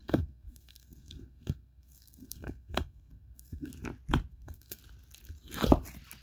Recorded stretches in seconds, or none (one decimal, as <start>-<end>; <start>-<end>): 3.7-4.3; 4.8-6.2